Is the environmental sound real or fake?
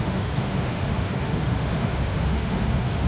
fake